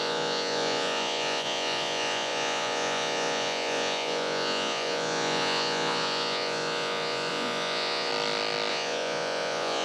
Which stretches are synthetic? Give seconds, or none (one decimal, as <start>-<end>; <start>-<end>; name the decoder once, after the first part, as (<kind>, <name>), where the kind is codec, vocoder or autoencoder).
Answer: 0.0-8.1 (vocoder, Vocos); 8.7-9.8